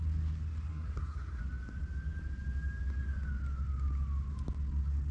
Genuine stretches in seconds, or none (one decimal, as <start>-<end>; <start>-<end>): 0.0-0.7; 1.4-5.1